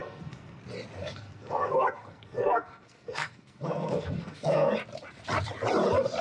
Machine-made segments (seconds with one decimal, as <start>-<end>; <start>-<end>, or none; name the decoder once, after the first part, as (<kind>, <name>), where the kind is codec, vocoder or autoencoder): 0.0-0.6 (codec, SNAC); 1.0-4.7